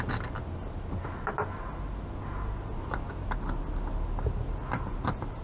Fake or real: real